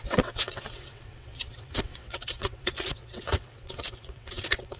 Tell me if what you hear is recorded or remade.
remade